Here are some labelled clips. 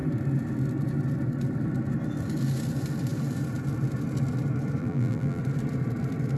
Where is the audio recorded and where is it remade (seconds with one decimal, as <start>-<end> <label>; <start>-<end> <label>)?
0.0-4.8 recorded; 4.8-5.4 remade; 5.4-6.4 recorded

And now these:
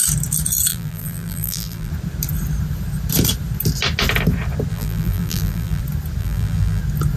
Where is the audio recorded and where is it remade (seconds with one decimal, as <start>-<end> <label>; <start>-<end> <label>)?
0.0-0.7 recorded; 0.7-1.9 remade; 1.9-4.7 recorded; 4.7-5.8 remade; 5.8-6.2 recorded; 6.2-6.8 remade; 6.8-7.2 recorded

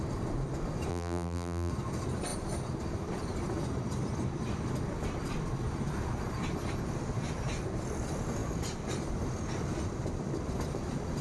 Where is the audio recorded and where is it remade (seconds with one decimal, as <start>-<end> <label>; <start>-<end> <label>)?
0.0-0.9 recorded; 0.9-1.7 remade; 1.7-11.2 recorded

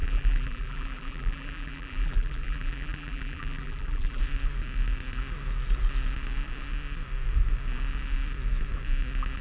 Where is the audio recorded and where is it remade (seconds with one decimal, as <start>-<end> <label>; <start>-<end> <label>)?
0.0-4.2 remade; 4.2-9.4 recorded